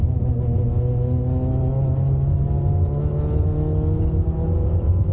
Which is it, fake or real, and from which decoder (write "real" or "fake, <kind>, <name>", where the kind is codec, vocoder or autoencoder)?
real